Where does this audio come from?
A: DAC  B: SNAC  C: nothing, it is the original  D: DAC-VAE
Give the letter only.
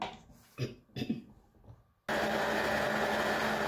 C